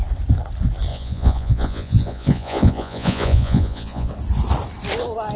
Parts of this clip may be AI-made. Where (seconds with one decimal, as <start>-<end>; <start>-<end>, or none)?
0.9-4.1